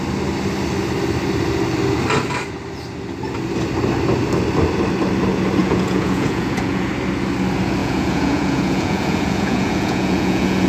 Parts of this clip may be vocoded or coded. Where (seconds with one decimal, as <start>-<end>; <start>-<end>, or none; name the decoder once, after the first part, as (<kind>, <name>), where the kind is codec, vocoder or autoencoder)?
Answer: 5.6-6.9 (vocoder, Vocos); 7.8-10.7